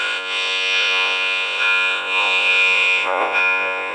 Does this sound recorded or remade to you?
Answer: remade